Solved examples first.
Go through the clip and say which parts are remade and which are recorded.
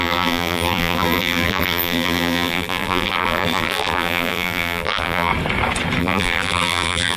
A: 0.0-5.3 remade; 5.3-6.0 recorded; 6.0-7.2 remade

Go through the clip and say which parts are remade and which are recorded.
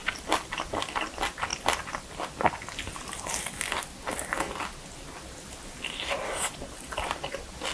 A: 0.0-7.7 recorded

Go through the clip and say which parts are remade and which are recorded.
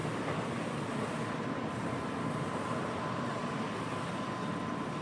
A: 0.0-3.0 remade; 3.0-3.4 recorded; 3.4-4.1 remade; 4.1-5.0 recorded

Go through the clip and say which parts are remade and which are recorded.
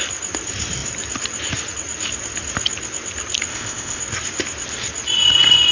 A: 0.0-3.5 recorded; 3.5-4.0 remade; 4.0-5.7 recorded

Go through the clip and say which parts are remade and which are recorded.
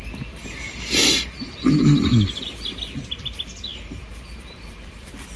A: 0.0-5.4 recorded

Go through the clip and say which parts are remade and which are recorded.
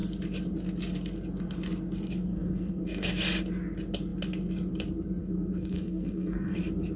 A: 0.0-2.3 recorded; 2.3-3.1 remade; 3.1-5.2 recorded; 5.2-6.6 remade; 6.6-7.0 recorded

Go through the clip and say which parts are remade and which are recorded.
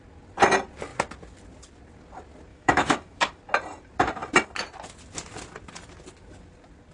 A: 0.0-2.5 recorded; 2.5-3.4 remade; 3.4-6.9 recorded